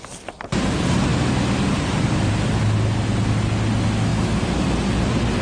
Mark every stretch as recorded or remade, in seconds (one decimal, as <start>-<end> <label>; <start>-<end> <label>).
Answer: 0.0-5.4 recorded